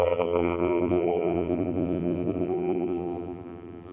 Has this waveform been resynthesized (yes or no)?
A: yes